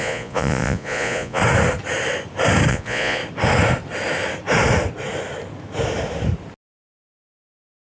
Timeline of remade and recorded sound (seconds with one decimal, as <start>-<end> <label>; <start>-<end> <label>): 0.0-1.4 remade; 1.4-2.7 recorded; 2.7-3.2 remade; 3.2-7.9 recorded